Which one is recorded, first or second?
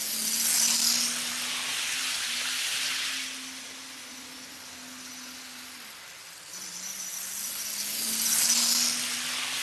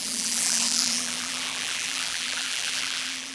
first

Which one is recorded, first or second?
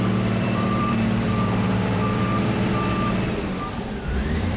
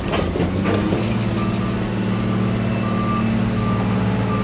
second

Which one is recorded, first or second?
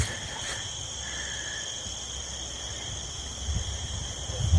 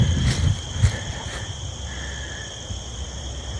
first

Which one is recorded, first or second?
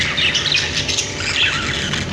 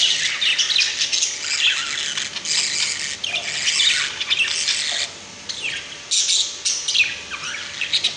second